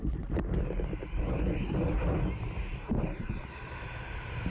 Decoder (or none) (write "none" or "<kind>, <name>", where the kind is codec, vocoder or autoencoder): none